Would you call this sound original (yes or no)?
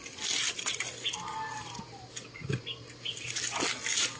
yes